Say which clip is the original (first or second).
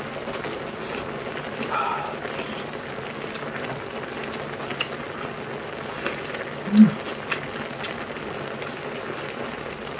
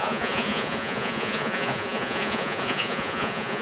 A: first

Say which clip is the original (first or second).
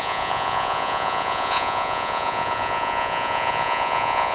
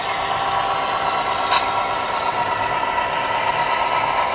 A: second